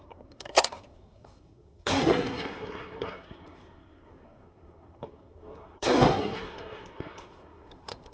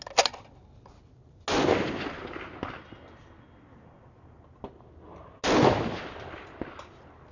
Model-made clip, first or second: first